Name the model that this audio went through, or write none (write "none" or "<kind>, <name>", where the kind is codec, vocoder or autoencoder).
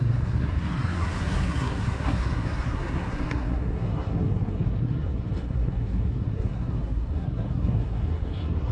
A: codec, SNAC